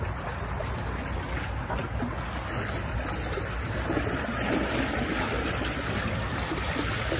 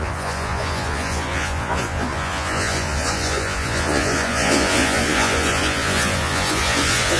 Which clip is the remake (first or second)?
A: second